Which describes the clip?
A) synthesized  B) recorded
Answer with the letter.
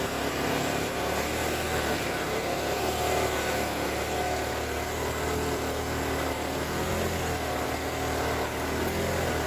B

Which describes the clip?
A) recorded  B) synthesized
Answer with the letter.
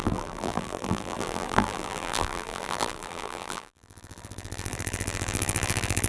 B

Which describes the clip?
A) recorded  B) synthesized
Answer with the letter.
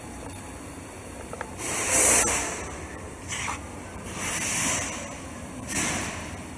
B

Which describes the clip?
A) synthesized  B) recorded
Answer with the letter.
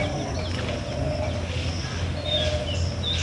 B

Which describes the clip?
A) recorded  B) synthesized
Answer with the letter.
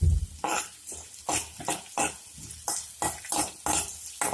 A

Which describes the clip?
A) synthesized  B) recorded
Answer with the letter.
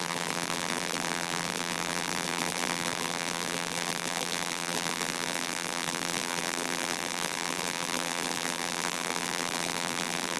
A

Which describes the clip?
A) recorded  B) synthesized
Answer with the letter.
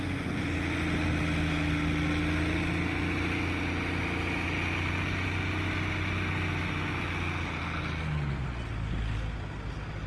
A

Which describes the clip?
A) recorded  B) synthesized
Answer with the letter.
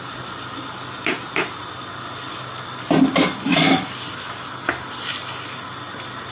A